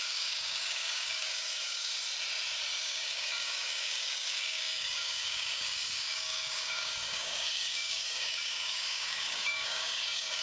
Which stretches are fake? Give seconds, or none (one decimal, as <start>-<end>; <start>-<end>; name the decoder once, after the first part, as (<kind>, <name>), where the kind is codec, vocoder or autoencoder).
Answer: 0.0-1.9 (codec, DAC); 2.8-10.4